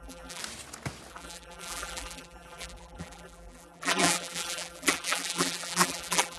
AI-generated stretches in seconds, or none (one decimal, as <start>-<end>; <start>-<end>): 0.0-0.4; 1.1-6.4